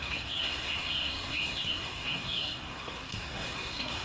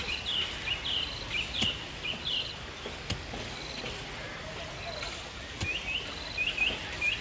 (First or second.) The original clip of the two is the second